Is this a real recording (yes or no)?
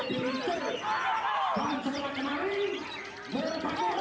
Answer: no